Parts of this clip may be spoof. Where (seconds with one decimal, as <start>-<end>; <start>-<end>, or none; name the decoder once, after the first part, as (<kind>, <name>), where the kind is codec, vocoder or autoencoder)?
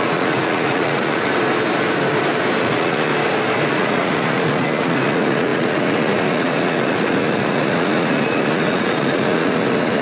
0.0-1.3 (vocoder, Vocos); 2.6-3.1; 3.7-10.0